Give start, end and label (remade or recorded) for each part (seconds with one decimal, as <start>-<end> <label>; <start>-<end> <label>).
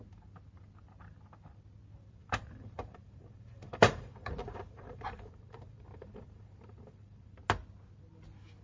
0.0-2.2 recorded; 2.2-7.3 remade; 7.3-8.6 recorded